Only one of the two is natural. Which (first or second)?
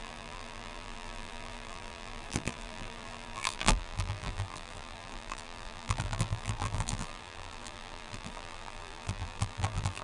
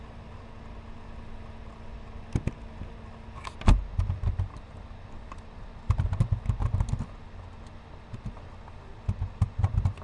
second